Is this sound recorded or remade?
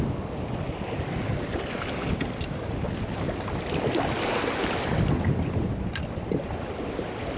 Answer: recorded